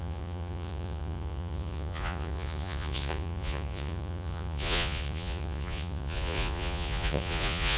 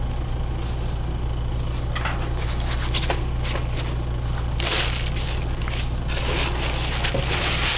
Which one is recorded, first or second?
second